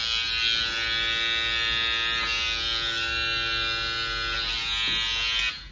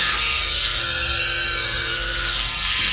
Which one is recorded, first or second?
first